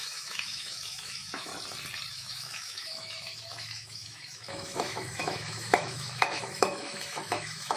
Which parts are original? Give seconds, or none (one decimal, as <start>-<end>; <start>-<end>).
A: 1.5-2.1